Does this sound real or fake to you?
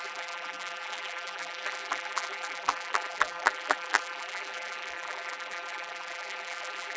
fake